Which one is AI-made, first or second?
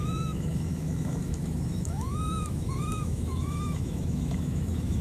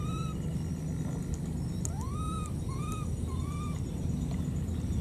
first